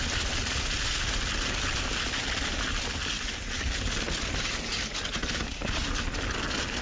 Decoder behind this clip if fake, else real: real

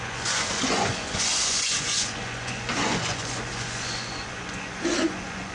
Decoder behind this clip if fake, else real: fake, vocoder, Vocos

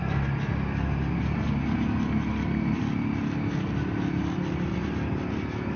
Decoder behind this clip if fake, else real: real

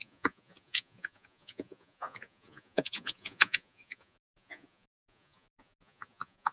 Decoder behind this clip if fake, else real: fake, vocoder, Vocos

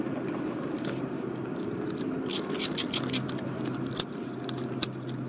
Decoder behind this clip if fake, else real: real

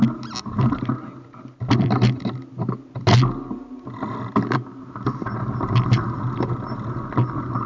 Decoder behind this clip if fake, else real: real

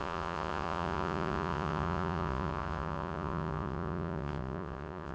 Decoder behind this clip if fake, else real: fake, vocoder, Vocos